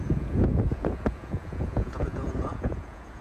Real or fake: fake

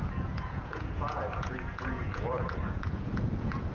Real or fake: fake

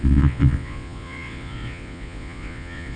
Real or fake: fake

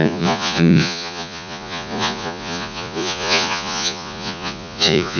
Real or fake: fake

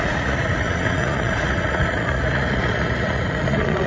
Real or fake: fake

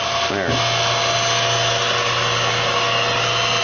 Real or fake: real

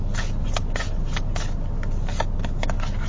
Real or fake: real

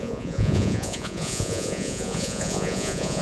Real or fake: fake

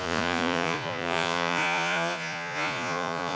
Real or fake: fake